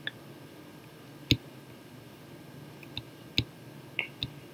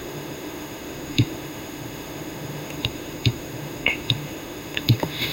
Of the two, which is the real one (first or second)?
first